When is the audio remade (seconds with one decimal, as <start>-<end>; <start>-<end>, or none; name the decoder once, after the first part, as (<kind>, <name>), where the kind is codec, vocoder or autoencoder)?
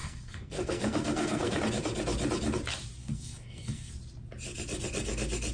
0.0-1.6 (codec, SNAC); 3.0-3.9